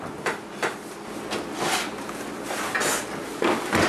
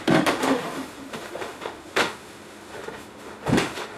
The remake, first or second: second